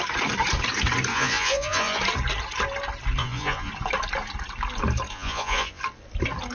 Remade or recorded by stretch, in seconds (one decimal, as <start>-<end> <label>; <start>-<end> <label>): 0.0-1.1 recorded; 1.1-2.0 remade; 2.0-3.2 recorded; 3.2-3.7 remade; 3.7-5.1 recorded; 5.1-5.8 remade; 5.8-6.5 recorded